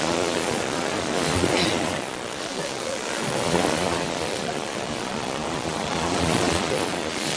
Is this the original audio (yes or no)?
no